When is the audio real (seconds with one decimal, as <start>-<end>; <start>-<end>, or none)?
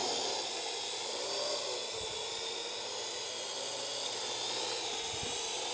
0.0-5.7